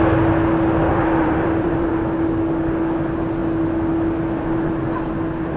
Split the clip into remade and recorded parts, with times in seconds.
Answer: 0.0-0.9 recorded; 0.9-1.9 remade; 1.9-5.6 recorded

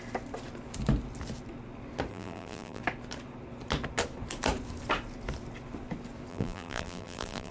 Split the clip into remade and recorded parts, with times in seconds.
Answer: 0.0-2.1 recorded; 2.1-2.8 remade; 2.8-6.3 recorded; 6.3-7.5 remade

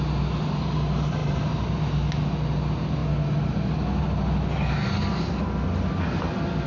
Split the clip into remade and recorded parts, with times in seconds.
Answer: 0.0-6.7 recorded

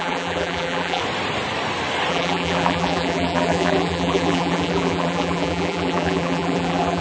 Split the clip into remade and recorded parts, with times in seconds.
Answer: 0.0-1.0 remade; 1.0-2.1 recorded; 2.1-7.0 remade

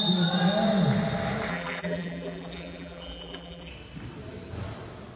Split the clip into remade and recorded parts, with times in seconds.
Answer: 0.0-1.5 recorded; 1.5-3.7 remade; 3.7-5.2 recorded